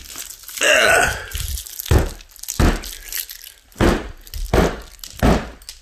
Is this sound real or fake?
real